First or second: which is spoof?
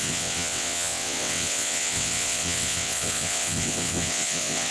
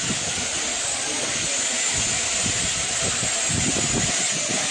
first